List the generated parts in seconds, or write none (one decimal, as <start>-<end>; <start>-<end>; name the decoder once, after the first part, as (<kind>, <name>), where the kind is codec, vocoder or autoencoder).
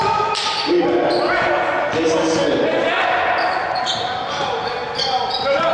none